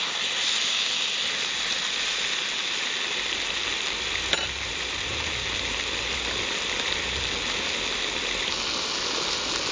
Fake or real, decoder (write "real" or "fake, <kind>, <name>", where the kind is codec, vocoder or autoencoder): real